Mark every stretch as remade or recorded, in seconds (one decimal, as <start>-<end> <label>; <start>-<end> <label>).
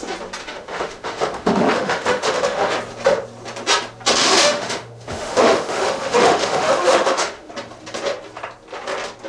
0.0-0.4 recorded; 0.4-2.7 remade; 2.7-4.2 recorded; 4.2-7.5 remade; 7.5-9.3 recorded